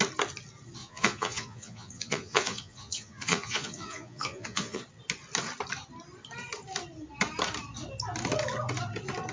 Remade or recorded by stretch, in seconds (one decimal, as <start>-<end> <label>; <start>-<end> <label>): 0.0-0.8 recorded; 0.8-4.8 remade; 4.8-9.3 recorded